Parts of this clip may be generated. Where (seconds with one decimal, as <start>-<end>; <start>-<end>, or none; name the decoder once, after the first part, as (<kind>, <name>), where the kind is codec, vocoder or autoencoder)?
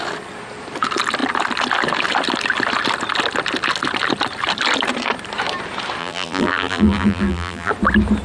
6.0-7.7 (vocoder, BigVGAN v2)